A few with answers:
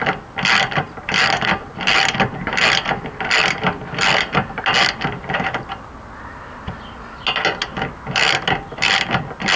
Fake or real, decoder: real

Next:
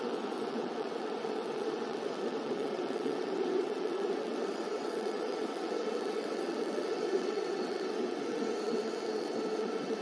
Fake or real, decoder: fake, vocoder, WaveNeXt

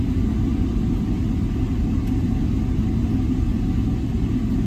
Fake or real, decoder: real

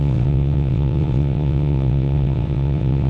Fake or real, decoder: fake, vocoder, WaveNeXt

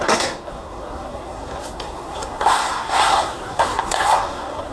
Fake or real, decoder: fake, codec, SNAC